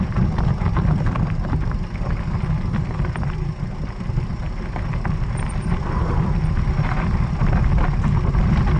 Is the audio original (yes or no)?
yes